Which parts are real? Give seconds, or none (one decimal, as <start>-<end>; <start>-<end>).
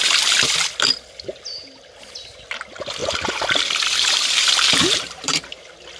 0.0-3.0; 5.4-6.0